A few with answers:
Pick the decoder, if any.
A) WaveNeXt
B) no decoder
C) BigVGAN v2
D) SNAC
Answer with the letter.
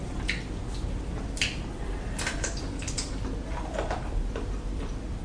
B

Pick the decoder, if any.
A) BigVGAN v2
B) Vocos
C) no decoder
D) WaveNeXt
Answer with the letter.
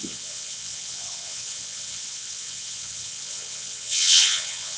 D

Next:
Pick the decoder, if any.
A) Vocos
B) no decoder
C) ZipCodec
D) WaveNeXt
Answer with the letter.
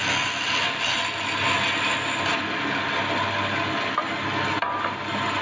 B